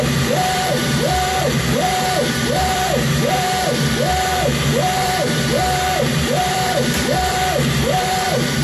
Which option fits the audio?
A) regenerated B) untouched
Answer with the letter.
A